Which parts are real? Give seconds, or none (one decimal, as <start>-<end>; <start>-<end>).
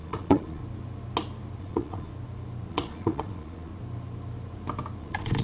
0.6-1.6; 2.1-2.7; 3.7-5.0